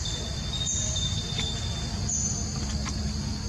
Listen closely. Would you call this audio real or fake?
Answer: real